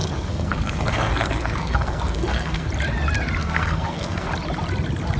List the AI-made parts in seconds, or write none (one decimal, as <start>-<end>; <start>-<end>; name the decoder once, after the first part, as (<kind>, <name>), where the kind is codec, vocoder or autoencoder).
0.0-2.7 (codec, SNAC); 3.4-4.3

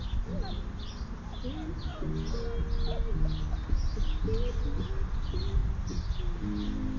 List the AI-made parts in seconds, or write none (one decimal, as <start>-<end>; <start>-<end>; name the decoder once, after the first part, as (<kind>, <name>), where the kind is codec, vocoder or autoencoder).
none

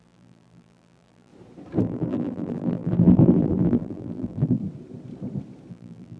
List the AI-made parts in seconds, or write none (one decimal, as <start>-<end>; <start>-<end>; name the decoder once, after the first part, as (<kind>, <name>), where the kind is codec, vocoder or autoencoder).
0.0-1.3 (vocoder, BigVGAN v2); 1.8-4.6; 5.7-6.2